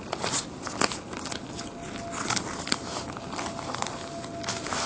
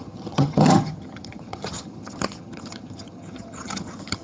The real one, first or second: first